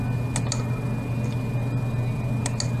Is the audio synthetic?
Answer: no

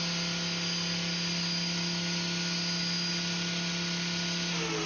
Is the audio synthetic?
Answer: no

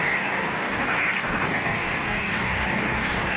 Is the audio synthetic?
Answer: yes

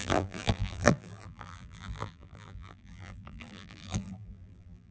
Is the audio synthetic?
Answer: yes